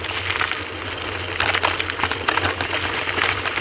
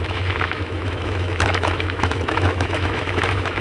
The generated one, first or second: second